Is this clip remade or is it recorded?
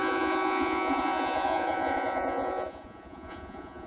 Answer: remade